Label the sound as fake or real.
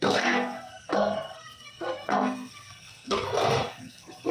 fake